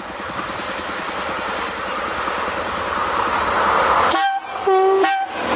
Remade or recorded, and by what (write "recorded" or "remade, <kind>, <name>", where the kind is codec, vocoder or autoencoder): recorded